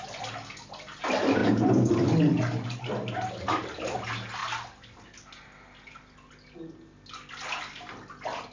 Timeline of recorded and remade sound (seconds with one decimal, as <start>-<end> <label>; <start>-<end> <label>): 0.0-1.4 recorded; 1.4-2.9 remade; 2.9-8.5 recorded